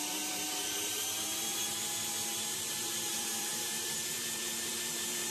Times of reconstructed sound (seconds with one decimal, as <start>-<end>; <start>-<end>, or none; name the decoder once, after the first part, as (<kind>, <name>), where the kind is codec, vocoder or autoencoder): 0.0-1.6 (vocoder, BigVGAN v2); 2.8-5.3